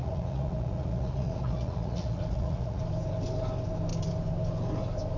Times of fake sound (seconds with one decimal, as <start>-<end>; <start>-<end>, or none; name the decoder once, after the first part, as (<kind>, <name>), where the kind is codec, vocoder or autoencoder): 0.0-2.8 (vocoder, Vocos)